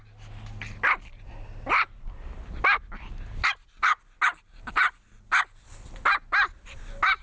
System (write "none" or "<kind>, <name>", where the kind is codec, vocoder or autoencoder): none